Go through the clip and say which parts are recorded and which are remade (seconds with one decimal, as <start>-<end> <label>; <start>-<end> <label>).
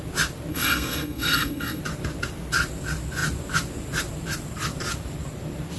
0.0-0.5 recorded; 0.5-1.8 remade; 1.8-5.8 recorded